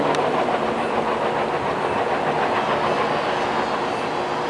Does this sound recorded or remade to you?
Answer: recorded